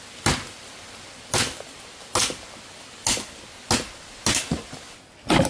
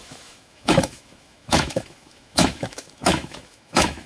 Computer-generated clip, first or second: second